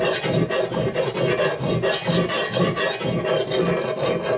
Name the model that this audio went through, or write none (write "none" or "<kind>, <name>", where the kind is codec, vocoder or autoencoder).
none